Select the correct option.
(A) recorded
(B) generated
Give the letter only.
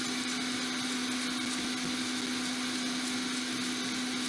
A